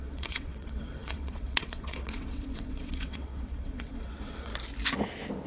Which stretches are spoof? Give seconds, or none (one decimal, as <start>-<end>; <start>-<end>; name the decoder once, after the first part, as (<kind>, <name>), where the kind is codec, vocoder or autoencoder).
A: 0.0-4.5 (vocoder, WaveNeXt)